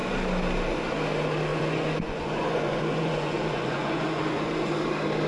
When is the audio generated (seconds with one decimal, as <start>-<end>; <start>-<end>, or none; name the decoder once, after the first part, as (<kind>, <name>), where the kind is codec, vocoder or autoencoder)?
1.5-4.7 (vocoder, Vocos)